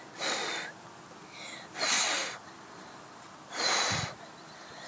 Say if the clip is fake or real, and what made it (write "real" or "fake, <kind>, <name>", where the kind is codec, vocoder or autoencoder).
real